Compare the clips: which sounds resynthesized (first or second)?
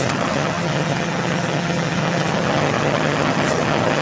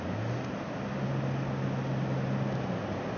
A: first